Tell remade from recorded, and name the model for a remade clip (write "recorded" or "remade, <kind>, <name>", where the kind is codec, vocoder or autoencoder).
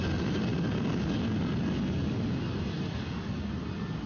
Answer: recorded